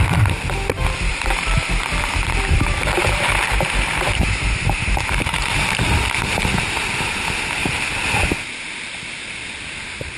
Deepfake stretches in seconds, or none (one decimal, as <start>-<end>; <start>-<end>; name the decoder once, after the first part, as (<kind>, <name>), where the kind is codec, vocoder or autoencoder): 1.1-5.8 (vocoder, BigVGAN v2); 7.6-8.1